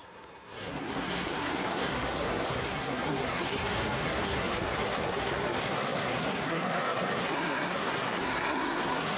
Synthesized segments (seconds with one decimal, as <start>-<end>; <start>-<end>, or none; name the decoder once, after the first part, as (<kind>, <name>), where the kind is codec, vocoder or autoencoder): 0.0-9.2 (codec, SNAC)

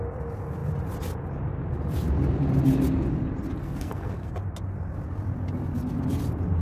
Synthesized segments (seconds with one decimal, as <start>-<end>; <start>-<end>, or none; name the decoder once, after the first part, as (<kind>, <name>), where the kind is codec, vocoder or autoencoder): 3.6-4.3 (codec, SNAC)

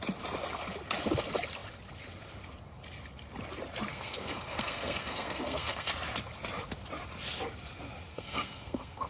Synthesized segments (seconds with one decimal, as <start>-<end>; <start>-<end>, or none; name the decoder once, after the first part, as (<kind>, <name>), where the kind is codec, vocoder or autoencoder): 3.9-5.9 (codec, SNAC); 8.1-9.1